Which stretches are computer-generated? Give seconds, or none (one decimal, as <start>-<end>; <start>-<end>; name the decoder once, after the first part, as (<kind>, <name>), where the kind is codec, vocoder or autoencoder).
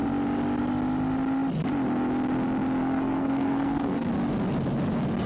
2.8-4.1 (codec, SNAC)